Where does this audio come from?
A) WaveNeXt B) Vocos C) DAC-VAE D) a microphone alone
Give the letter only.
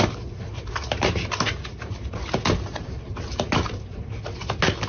D